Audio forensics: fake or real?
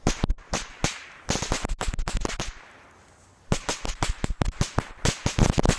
real